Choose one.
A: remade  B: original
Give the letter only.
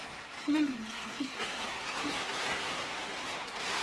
A